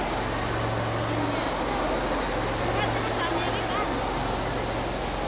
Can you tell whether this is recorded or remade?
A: recorded